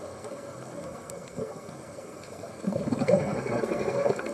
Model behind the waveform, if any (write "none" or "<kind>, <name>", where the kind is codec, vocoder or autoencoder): codec, SNAC